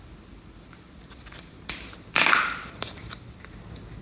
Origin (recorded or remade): recorded